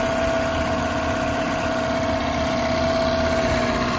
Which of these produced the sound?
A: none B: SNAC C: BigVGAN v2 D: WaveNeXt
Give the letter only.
A